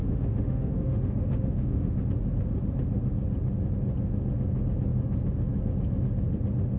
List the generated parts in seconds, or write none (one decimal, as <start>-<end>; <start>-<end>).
0.0-2.0